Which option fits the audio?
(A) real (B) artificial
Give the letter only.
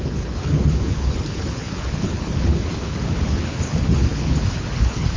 B